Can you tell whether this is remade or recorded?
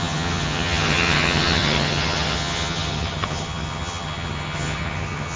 remade